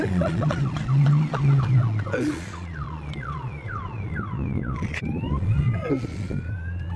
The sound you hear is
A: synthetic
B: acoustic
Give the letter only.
A